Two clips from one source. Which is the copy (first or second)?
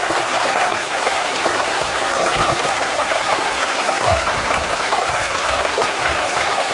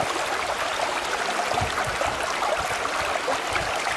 first